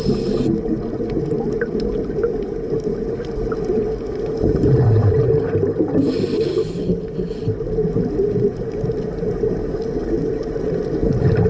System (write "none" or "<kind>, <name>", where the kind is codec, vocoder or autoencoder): none